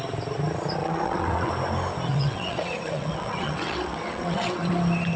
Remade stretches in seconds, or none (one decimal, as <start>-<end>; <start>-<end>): 0.8-1.5; 2.1-4.7